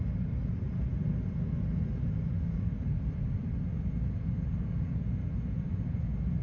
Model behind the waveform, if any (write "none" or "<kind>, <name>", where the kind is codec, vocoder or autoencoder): none